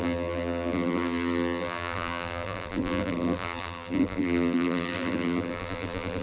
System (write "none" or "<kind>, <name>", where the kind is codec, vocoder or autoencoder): vocoder, BigVGAN v2